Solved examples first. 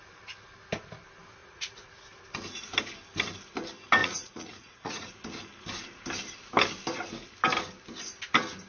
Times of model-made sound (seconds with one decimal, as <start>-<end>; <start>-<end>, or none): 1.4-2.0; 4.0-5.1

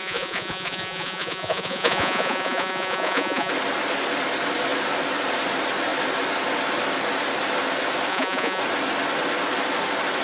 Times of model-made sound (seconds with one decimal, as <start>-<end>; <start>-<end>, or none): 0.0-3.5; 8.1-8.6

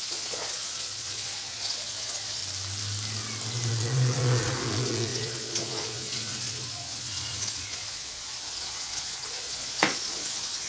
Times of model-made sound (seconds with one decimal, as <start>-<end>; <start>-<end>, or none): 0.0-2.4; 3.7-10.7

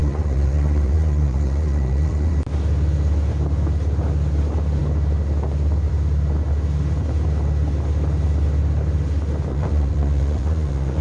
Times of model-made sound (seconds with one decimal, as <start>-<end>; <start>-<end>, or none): 0.0-2.3; 9.5-11.0